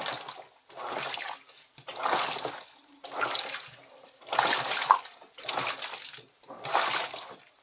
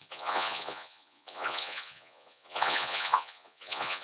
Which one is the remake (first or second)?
second